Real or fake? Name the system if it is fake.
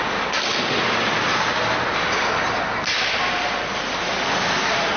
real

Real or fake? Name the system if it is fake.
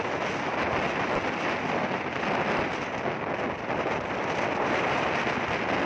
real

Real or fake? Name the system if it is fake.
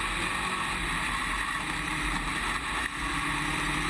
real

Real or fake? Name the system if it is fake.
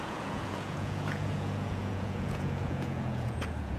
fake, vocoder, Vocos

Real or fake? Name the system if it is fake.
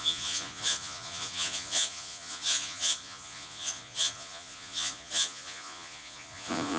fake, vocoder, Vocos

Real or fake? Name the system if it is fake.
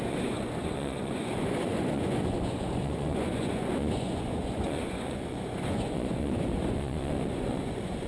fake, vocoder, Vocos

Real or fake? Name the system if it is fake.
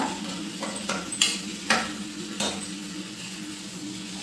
fake, vocoder, Vocos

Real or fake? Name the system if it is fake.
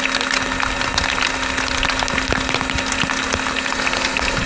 real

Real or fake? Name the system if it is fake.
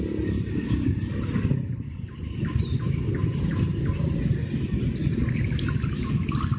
real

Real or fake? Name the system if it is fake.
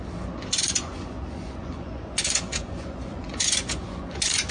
fake, vocoder, Vocos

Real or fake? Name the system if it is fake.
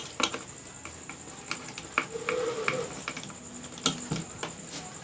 real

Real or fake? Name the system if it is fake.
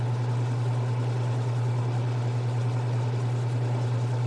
real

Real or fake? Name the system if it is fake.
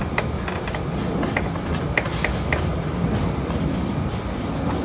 real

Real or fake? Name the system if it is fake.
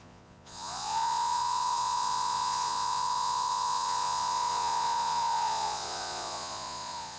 fake, vocoder, Vocos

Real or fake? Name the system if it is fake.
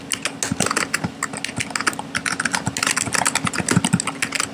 real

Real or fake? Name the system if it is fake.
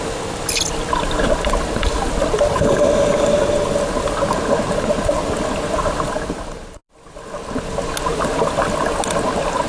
real